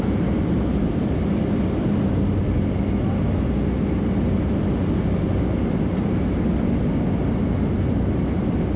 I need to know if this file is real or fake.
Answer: real